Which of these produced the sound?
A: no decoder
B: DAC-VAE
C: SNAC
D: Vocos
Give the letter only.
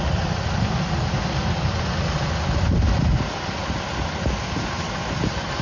A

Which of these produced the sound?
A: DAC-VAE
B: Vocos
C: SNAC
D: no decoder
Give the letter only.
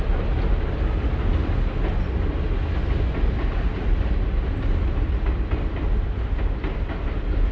D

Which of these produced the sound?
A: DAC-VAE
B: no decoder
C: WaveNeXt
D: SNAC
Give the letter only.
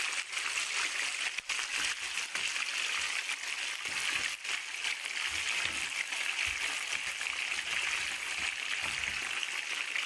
B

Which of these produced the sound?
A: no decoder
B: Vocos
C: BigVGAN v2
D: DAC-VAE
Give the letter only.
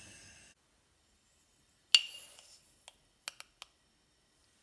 A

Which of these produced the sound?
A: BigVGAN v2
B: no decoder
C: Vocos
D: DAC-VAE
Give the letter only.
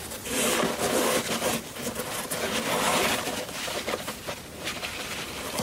B